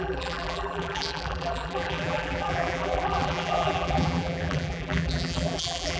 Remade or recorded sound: remade